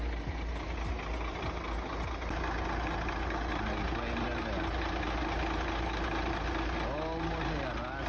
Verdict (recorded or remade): recorded